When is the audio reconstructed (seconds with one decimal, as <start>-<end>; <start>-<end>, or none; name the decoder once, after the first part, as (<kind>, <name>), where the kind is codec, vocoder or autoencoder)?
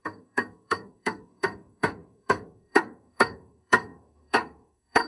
0.0-5.1 (codec, SNAC)